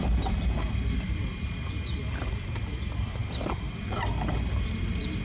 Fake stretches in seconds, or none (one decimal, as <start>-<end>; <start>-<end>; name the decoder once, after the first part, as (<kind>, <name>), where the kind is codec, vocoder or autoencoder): 0.0-5.2 (vocoder, BigVGAN v2)